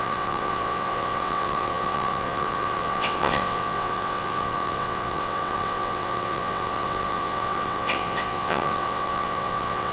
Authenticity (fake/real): fake